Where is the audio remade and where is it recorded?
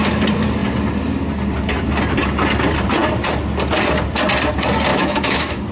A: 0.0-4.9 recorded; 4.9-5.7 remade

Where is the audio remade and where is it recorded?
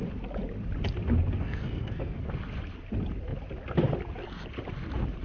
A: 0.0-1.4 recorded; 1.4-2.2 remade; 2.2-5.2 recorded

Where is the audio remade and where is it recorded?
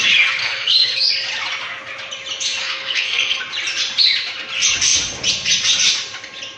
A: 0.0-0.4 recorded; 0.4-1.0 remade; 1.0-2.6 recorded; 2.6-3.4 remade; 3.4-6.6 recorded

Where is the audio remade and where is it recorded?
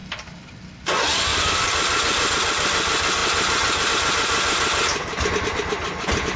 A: 0.0-0.5 remade; 0.5-1.3 recorded; 1.3-2.3 remade; 2.3-6.4 recorded